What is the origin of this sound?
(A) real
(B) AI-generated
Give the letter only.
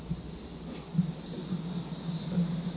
A